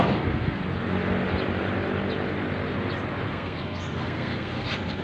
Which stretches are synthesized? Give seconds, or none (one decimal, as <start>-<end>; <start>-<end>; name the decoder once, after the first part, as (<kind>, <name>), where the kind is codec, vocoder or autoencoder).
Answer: 0.0-0.6 (codec, SNAC); 3.3-5.0